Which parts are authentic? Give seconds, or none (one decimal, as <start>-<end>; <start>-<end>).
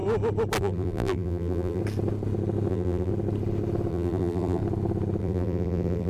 0.0-0.6; 1.8-2.7; 3.1-3.9; 4.6-5.2